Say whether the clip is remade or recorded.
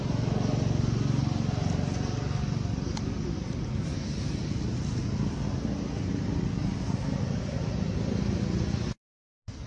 recorded